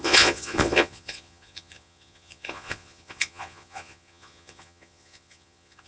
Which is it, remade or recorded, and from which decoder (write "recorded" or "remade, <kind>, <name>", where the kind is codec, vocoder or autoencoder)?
remade, vocoder, Vocos